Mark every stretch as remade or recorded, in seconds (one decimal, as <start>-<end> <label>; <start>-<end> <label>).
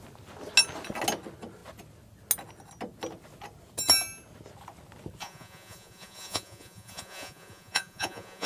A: 0.0-5.2 recorded; 5.2-8.5 remade